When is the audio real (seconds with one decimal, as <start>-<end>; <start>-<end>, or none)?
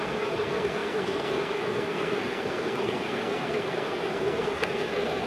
none